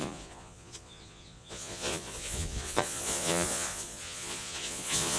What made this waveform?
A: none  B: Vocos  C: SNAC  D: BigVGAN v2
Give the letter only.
B